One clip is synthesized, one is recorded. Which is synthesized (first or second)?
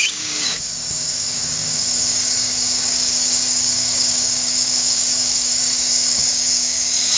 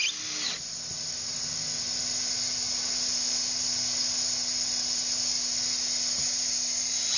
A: first